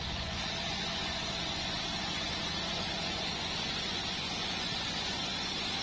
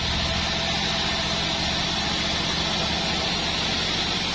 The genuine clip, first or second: second